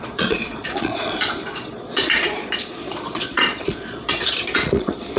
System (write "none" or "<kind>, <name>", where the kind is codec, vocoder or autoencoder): vocoder, Vocos